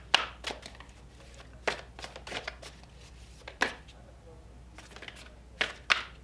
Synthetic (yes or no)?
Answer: no